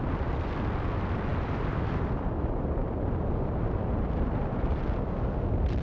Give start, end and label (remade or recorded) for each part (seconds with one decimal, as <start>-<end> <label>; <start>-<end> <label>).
0.0-1.3 recorded; 1.3-2.3 remade; 2.3-2.8 recorded; 2.8-3.5 remade; 3.5-5.8 recorded